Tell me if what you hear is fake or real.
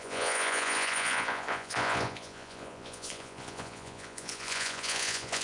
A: fake